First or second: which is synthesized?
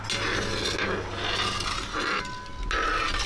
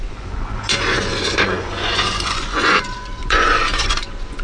second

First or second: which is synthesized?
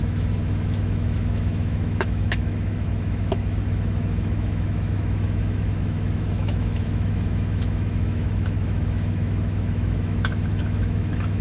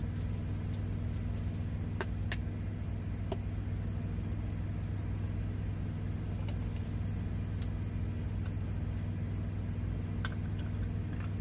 first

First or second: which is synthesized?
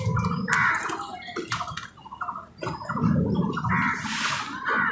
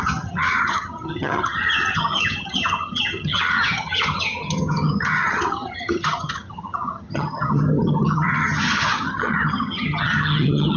second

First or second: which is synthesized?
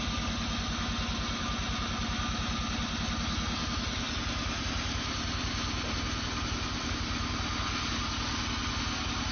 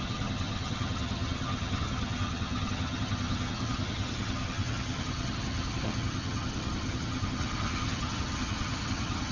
second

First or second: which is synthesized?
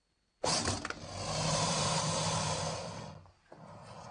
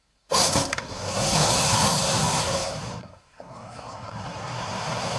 second